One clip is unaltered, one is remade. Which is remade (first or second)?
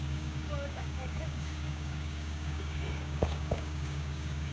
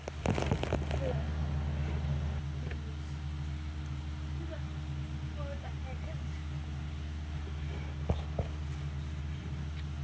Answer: first